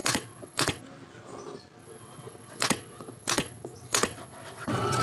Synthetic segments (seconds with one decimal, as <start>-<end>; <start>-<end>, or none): 0.0-0.8; 1.8-5.0